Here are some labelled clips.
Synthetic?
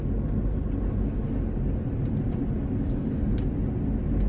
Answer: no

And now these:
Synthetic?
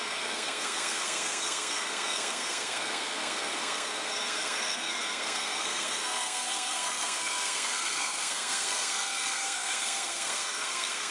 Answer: yes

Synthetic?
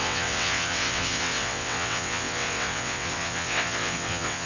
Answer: yes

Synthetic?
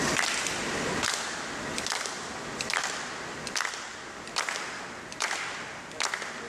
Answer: no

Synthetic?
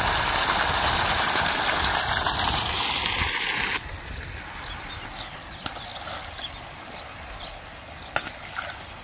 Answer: no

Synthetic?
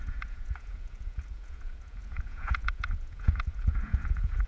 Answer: yes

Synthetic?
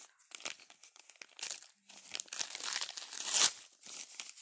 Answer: no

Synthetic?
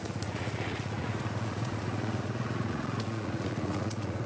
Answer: yes